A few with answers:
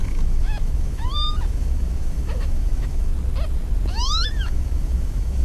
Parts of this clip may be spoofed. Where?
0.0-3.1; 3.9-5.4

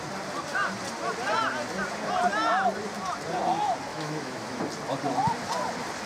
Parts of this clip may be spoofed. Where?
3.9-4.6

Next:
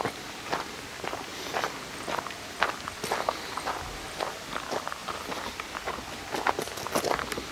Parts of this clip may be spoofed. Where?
none

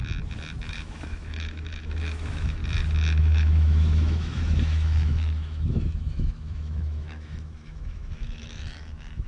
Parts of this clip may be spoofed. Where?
0.7-2.6; 3.2-9.3